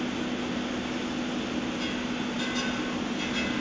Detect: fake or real real